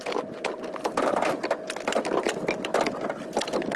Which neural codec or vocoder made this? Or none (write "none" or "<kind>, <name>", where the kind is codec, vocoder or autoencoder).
none